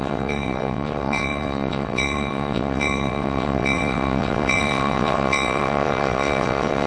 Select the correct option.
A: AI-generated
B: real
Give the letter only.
A